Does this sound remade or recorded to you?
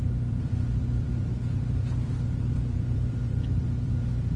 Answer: remade